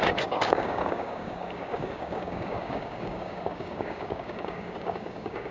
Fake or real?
fake